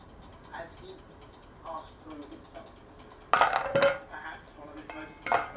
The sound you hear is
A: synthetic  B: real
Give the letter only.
B